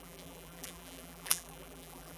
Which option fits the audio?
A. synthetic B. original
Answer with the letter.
A